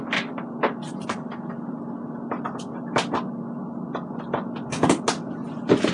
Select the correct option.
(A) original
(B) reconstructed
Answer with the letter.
A